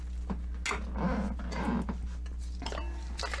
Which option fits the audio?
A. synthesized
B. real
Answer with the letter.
B